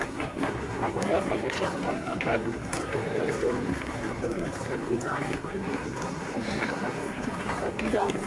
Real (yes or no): no